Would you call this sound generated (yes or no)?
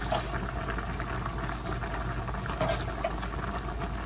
no